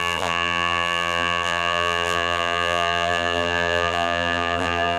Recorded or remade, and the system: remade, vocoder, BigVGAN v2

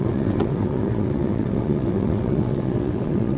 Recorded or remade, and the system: remade, vocoder, WaveNeXt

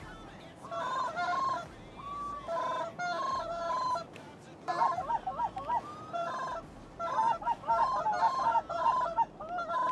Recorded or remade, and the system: recorded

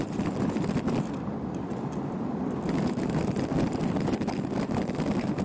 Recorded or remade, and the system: recorded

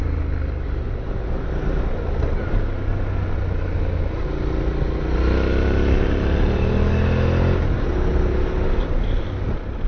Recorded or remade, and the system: recorded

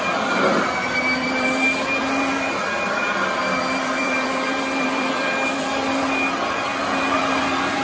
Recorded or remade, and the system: remade, vocoder, BigVGAN v2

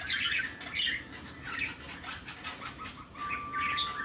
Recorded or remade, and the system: recorded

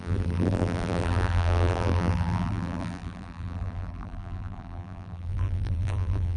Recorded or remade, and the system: remade, vocoder, BigVGAN v2